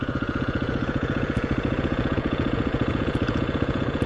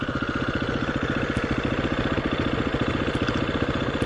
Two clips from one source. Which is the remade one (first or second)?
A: first